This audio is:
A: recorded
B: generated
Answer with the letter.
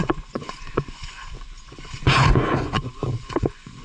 B